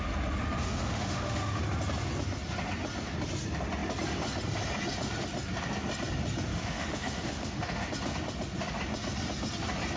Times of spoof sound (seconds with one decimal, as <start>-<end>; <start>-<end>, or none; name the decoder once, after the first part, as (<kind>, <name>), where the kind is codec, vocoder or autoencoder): 0.6-1.6 (autoencoder, DAC-VAE); 6.5-7.9